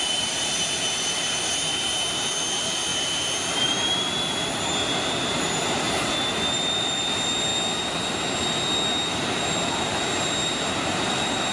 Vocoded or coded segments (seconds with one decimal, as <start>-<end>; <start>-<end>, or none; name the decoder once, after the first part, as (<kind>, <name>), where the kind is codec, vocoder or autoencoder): 0.0-7.5 (vocoder, BigVGAN v2); 9.1-11.5

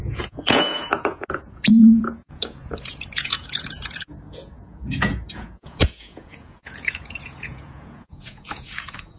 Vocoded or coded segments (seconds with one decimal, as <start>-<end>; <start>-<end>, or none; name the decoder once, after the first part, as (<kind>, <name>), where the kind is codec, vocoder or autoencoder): 0.0-9.2 (vocoder, Vocos)